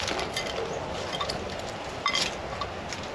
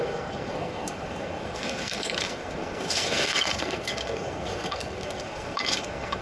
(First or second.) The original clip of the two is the first